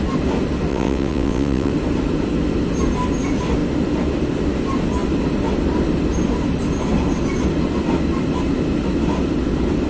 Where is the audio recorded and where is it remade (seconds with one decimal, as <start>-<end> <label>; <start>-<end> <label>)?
0.0-0.7 recorded; 0.7-1.7 remade; 1.7-9.9 recorded